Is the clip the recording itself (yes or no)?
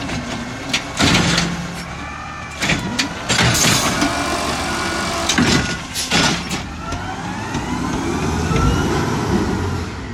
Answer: yes